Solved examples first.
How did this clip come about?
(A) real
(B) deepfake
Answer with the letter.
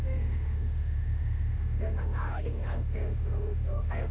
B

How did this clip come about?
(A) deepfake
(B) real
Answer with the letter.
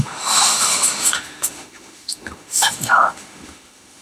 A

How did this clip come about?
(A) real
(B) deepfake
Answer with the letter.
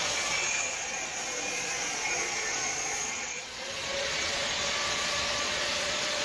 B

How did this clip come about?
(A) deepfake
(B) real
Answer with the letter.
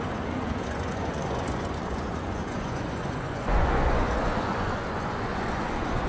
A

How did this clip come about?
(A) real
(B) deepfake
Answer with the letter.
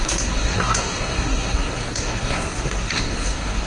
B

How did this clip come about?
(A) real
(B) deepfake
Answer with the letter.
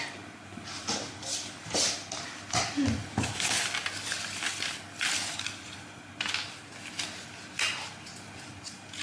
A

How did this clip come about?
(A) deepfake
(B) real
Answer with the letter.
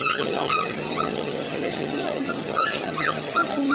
A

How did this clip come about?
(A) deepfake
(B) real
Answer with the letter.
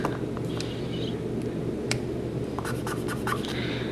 B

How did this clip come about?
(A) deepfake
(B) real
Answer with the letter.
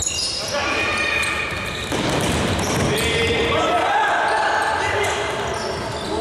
B